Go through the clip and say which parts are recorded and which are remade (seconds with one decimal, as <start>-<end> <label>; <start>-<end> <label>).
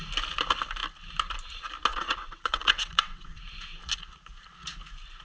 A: 0.0-1.9 recorded; 1.9-3.4 remade; 3.4-5.2 recorded